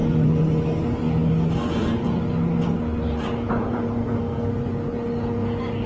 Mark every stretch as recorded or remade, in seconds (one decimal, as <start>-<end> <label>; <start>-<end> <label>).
0.0-4.0 recorded; 4.0-4.5 remade; 4.5-5.9 recorded